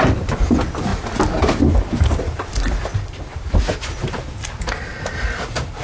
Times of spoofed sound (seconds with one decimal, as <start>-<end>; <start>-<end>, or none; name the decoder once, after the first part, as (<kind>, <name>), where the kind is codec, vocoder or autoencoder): none